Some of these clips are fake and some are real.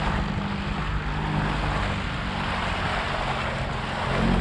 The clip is real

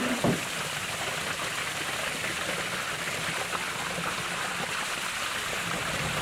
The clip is real